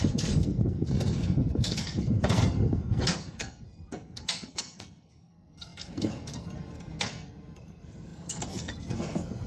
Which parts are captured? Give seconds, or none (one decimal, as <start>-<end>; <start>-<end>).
none